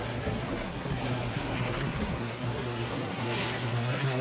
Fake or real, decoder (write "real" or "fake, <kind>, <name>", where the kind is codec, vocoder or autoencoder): fake, codec, SNAC